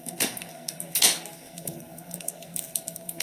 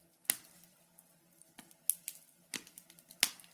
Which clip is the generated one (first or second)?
first